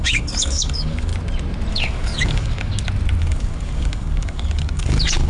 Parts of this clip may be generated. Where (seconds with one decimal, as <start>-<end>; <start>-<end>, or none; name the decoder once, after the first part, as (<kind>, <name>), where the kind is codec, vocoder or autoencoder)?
0.0-1.1 (codec, DAC); 1.7-2.7; 3.2-5.3